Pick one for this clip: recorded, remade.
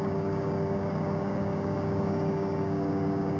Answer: remade